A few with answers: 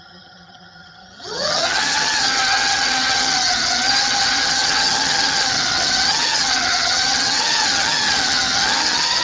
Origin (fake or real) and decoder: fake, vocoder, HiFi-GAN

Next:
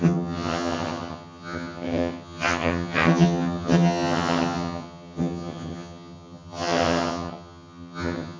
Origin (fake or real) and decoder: fake, vocoder, HiFi-GAN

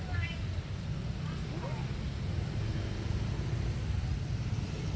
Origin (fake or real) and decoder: real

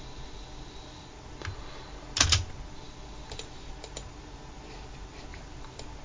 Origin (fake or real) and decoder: real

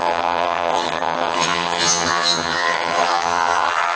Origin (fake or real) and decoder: fake, vocoder, HiFi-GAN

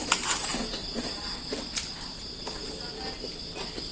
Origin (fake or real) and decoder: real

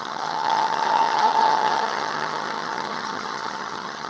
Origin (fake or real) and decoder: fake, vocoder, HiFi-GAN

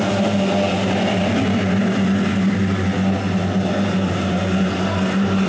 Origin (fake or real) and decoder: real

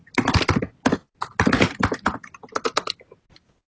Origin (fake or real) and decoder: real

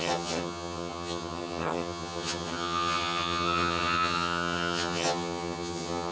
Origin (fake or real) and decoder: fake, vocoder, HiFi-GAN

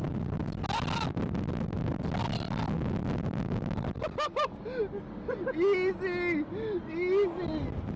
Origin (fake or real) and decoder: real